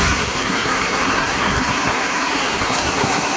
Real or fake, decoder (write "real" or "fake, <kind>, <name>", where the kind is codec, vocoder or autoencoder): fake, codec, SNAC